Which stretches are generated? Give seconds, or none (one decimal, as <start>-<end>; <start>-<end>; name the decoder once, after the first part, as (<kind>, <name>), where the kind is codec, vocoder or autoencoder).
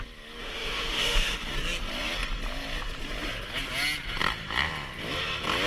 0.4-1.5 (autoencoder, DAC-VAE)